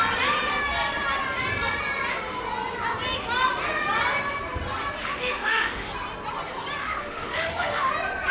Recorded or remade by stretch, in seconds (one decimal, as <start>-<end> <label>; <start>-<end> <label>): 0.0-5.0 recorded; 5.0-5.9 remade; 5.9-6.8 recorded; 6.8-7.9 remade; 7.9-8.3 recorded